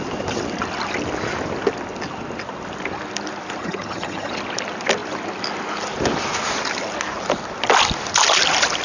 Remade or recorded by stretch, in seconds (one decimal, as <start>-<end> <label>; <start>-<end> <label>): 0.0-3.6 recorded; 3.6-4.3 remade; 4.3-8.8 recorded